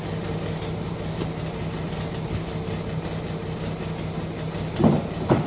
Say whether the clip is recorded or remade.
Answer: recorded